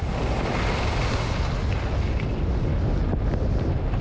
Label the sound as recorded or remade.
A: recorded